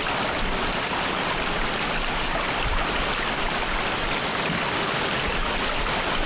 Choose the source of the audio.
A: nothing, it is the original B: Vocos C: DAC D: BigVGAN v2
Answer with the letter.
A